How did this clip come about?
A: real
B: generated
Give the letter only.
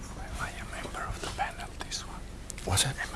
A